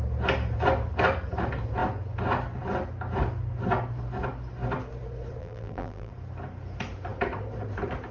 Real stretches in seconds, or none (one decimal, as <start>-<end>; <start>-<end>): 0.0-5.4; 6.1-8.1